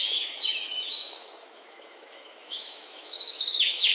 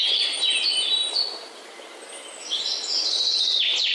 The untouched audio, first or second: second